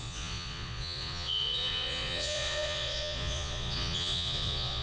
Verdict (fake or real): fake